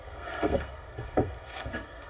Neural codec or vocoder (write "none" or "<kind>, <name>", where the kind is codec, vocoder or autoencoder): codec, SNAC